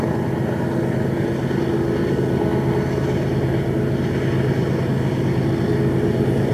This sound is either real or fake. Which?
real